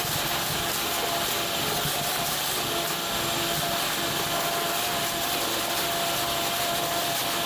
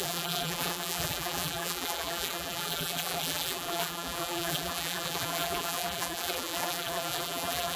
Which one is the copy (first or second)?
second